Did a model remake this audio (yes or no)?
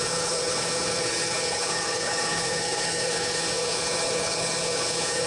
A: yes